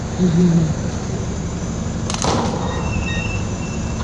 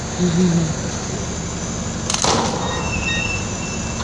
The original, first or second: second